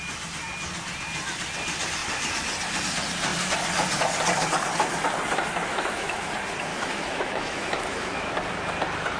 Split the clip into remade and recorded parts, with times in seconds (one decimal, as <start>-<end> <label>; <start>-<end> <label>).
0.0-5.7 recorded; 5.7-6.3 remade; 6.3-6.7 recorded; 6.7-8.3 remade; 8.3-9.2 recorded